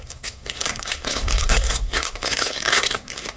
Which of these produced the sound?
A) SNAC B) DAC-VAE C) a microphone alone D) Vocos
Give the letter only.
A